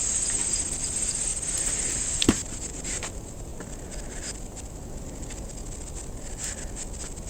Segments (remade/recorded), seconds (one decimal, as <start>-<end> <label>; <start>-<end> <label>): 0.0-1.3 remade; 1.3-1.9 recorded; 1.9-3.5 remade; 3.5-7.3 recorded